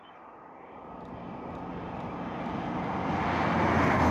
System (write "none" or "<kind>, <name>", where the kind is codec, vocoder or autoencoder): none